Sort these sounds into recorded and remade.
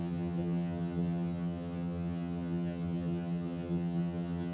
remade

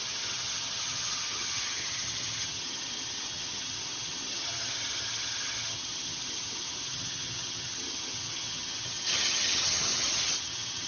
remade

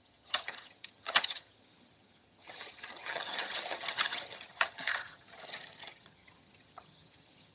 remade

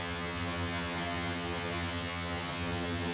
remade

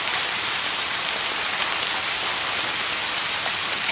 recorded